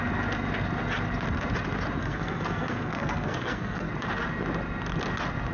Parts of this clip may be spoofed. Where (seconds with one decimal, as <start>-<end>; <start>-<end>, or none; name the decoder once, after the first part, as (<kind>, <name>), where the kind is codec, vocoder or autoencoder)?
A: 2.0-3.9 (codec, SNAC)